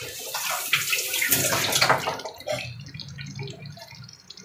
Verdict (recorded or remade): recorded